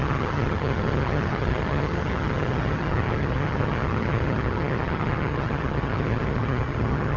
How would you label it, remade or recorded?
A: remade